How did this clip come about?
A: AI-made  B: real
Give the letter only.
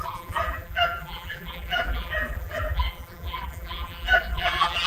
A